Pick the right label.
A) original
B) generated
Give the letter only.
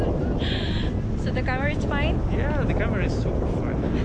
A